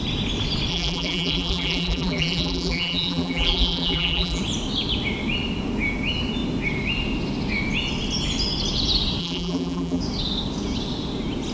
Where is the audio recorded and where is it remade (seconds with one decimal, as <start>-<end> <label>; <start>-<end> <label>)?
0.0-0.7 recorded; 0.7-4.4 remade; 4.4-9.2 recorded; 9.2-10.0 remade; 10.0-11.5 recorded